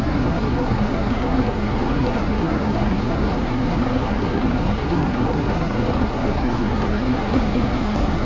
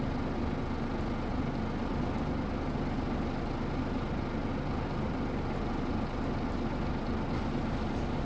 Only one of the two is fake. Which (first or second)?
first